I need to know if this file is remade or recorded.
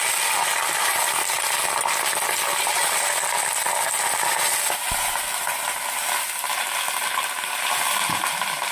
recorded